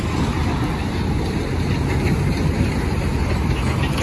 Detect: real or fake real